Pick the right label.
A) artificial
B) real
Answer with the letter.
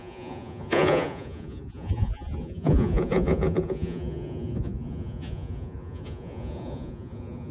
A